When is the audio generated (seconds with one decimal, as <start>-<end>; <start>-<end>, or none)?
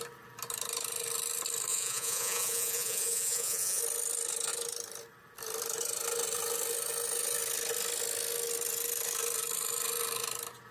1.7-3.8